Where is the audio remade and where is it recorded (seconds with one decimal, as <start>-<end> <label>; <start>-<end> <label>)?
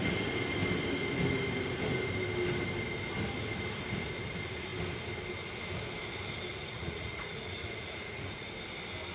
0.0-6.5 recorded; 6.5-8.5 remade; 8.5-9.1 recorded